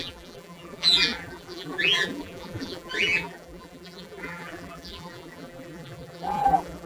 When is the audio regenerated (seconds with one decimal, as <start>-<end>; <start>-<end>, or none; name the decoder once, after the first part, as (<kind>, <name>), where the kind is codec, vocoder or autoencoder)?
0.0-6.9 (vocoder, BigVGAN v2)